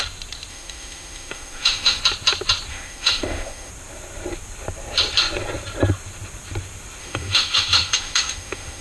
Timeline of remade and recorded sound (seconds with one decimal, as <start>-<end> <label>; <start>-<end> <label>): 0.0-0.5 recorded; 0.5-2.0 remade; 2.0-2.7 recorded; 2.7-3.7 remade; 3.7-7.0 recorded; 7.0-8.8 remade